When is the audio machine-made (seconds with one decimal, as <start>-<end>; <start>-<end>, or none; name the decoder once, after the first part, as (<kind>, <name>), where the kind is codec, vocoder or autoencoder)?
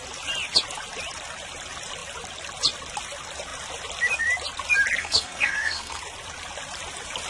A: 5.0-6.0 (codec, SNAC)